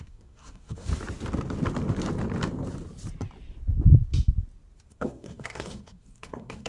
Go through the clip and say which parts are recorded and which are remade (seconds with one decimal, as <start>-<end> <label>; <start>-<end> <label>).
0.0-0.9 remade; 0.9-4.9 recorded; 4.9-6.7 remade